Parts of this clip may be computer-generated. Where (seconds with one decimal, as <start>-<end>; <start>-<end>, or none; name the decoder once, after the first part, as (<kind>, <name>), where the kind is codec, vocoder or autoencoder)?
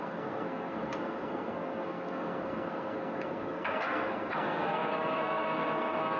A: 0.0-6.2 (codec, SNAC)